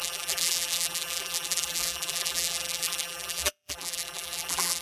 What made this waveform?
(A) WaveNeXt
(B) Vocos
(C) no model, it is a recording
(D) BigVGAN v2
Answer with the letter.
D